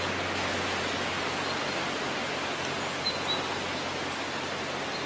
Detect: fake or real real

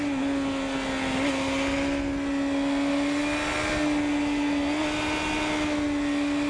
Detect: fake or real real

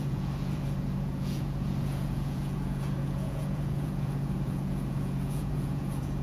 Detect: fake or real fake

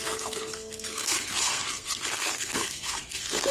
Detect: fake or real fake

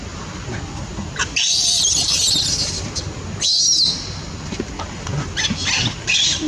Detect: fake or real real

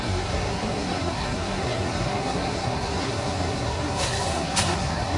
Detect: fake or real fake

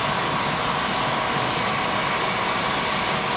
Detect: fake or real real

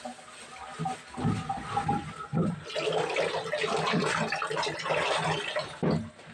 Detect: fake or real real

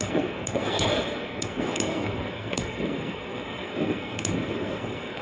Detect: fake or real fake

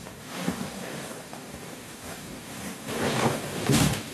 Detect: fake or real fake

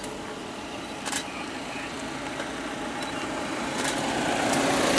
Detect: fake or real real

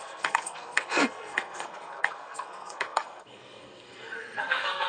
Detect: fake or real fake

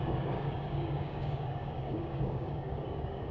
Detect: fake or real fake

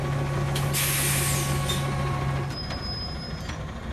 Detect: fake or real real